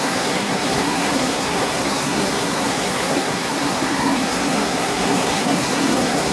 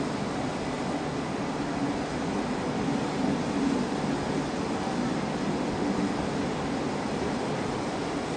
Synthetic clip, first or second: first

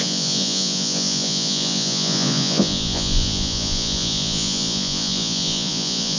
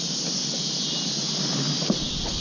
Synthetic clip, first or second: first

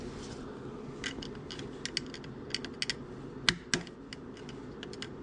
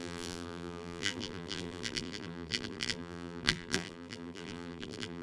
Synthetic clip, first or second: second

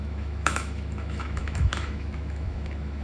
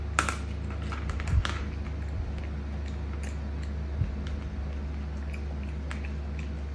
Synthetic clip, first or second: first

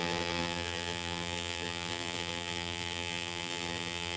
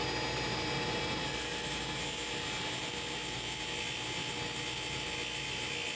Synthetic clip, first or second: first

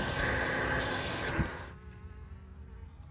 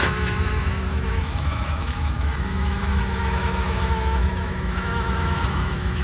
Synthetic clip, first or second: second